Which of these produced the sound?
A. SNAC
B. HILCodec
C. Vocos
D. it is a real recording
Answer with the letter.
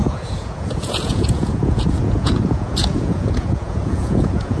C